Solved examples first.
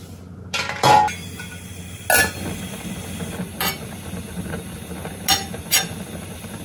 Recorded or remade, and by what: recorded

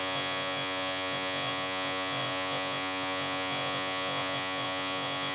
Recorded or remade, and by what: remade, vocoder, Vocos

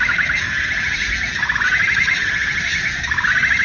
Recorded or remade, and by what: recorded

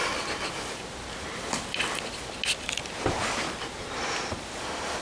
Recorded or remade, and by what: recorded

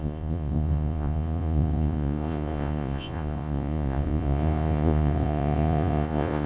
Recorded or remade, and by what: remade, vocoder, Vocos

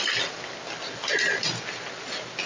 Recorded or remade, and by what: recorded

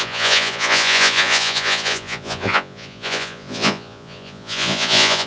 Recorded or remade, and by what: remade, vocoder, Vocos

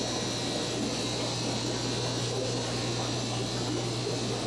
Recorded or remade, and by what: recorded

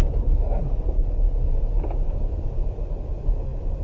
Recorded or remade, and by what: recorded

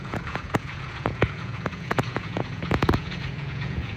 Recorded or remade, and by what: remade, vocoder, Vocos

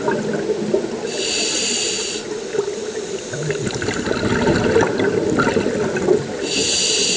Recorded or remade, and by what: recorded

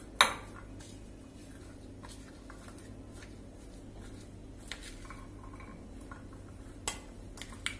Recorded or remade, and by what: recorded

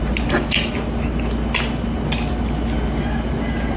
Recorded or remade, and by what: recorded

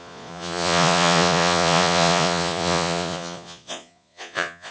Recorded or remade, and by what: remade, vocoder, Vocos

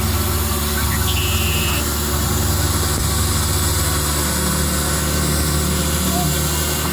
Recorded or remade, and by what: recorded